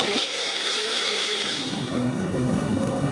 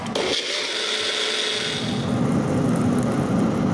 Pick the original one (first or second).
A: second